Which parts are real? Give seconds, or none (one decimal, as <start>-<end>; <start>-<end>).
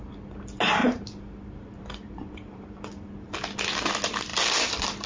0.0-0.8; 2.8-4.3